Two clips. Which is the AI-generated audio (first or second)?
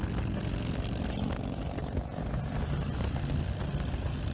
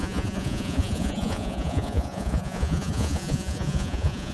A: second